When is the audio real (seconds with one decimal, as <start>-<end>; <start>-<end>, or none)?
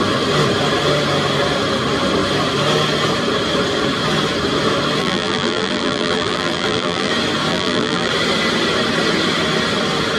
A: 0.0-5.0; 7.1-7.5; 8.1-10.2